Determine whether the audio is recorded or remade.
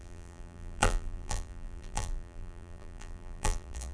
remade